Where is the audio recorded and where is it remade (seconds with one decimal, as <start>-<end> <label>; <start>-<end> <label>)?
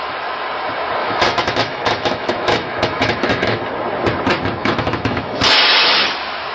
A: 0.0-1.0 recorded; 1.0-3.6 remade; 3.6-4.6 recorded; 4.6-5.4 remade; 5.4-6.5 recorded